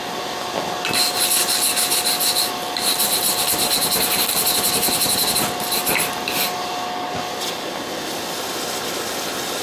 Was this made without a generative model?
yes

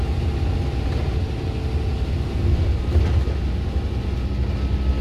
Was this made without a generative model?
yes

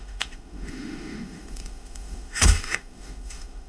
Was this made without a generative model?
no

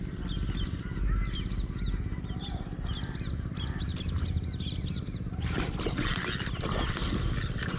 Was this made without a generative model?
yes